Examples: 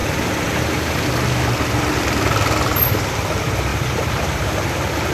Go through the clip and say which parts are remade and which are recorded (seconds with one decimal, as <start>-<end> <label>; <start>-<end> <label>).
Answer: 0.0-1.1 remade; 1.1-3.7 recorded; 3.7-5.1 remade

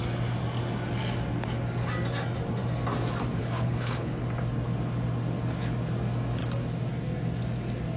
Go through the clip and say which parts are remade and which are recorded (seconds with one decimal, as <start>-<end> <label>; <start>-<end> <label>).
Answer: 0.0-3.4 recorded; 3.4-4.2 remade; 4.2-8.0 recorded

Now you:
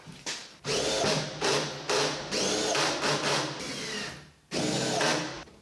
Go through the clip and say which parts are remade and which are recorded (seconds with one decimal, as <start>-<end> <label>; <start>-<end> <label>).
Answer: 0.0-5.6 recorded

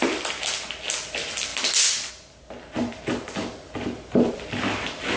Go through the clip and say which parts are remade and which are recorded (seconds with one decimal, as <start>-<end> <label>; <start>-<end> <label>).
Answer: 0.0-5.2 recorded

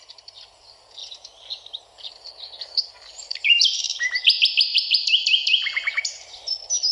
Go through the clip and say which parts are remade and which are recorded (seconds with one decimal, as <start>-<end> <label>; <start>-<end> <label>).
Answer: 0.0-3.3 recorded; 3.3-4.3 remade; 4.3-4.7 recorded; 4.7-6.5 remade; 6.5-6.9 recorded